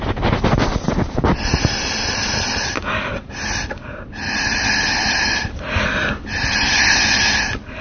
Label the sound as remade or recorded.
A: recorded